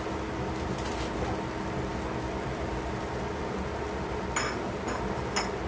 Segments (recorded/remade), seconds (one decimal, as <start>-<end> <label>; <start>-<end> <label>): 0.0-5.7 recorded

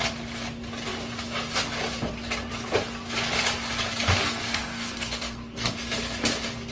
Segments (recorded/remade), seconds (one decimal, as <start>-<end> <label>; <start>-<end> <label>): 0.0-3.9 recorded; 3.9-5.7 remade; 5.7-6.7 recorded

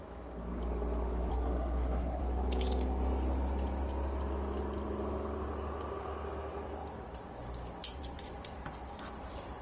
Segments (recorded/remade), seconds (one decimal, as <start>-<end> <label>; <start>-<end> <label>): 0.0-1.3 recorded; 1.3-2.2 remade; 2.2-9.6 recorded

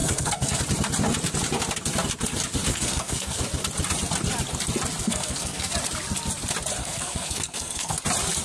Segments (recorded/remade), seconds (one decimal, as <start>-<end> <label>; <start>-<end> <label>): 0.0-0.6 remade; 0.6-2.7 recorded; 2.7-3.4 remade; 3.4-5.0 recorded; 5.0-5.7 remade; 5.7-6.8 recorded; 6.8-8.0 remade; 8.0-8.4 recorded

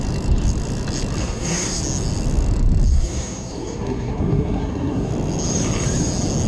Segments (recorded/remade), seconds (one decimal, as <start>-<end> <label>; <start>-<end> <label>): 0.0-1.2 recorded; 1.2-1.8 remade; 1.8-2.9 recorded; 2.9-5.1 remade; 5.1-6.5 recorded